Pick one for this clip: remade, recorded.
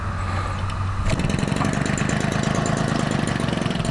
recorded